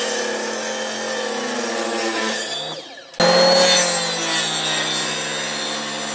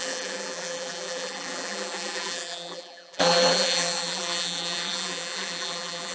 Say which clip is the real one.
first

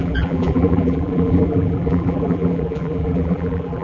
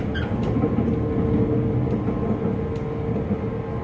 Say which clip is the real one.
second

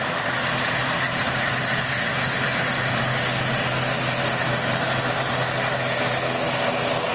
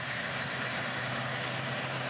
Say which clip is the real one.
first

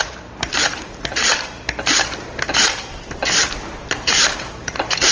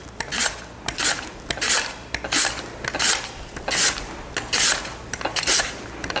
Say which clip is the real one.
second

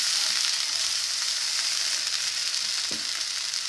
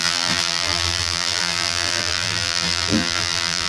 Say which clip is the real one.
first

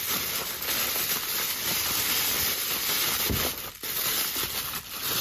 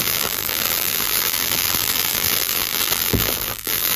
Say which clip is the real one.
first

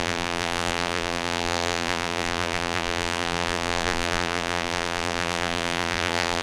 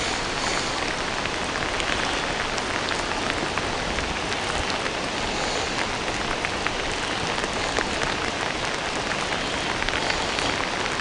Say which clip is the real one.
second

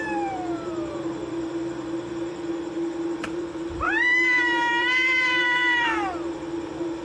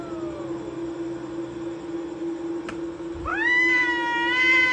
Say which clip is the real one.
second